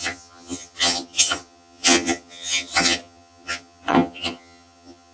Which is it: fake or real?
fake